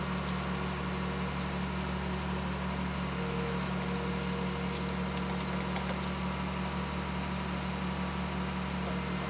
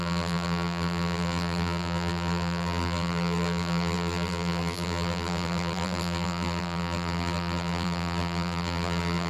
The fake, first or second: second